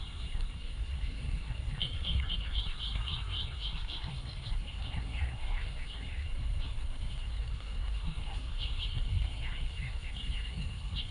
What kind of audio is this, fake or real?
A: fake